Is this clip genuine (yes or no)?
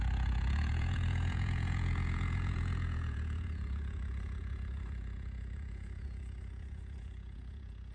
no